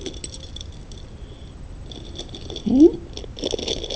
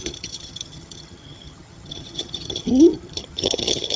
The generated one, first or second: second